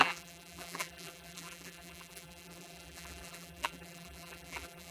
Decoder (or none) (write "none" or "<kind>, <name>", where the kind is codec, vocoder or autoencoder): vocoder, BigVGAN v2